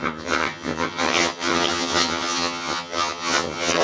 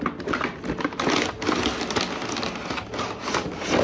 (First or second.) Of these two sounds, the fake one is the first